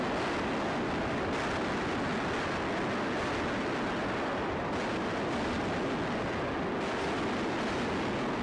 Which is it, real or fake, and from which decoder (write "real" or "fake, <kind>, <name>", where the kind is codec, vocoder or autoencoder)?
real